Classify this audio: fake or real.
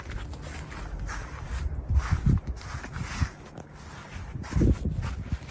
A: real